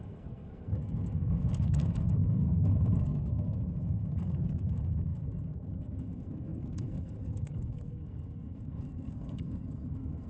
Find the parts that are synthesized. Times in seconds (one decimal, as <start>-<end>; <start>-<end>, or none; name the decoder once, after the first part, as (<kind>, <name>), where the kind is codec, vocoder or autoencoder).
0.0-10.3 (codec, SNAC)